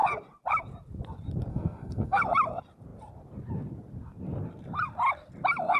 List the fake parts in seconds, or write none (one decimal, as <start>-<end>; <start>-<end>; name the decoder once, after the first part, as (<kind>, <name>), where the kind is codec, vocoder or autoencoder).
1.5-2.2 (codec, SNAC)